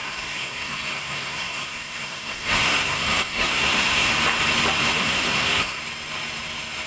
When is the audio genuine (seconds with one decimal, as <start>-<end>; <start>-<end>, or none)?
4.1-5.0; 5.8-6.9